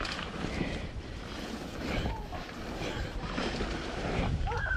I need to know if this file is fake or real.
fake